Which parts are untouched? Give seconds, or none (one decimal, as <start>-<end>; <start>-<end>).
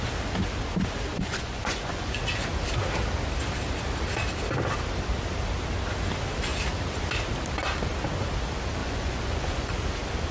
0.0-1.1; 2.2-8.8; 9.7-10.3